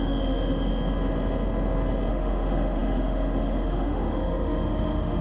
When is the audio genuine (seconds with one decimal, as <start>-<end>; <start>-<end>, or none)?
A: 0.7-2.1